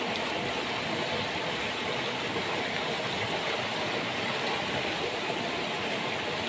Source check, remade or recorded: recorded